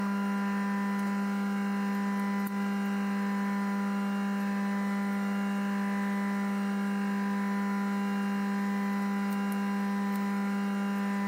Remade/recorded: recorded